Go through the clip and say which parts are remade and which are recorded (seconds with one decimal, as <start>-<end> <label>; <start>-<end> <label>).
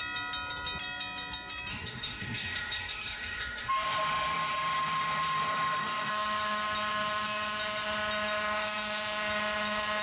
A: 0.0-1.7 recorded; 1.7-6.1 remade; 6.1-10.0 recorded